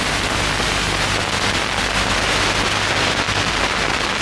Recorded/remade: recorded